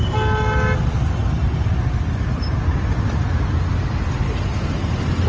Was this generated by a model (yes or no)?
no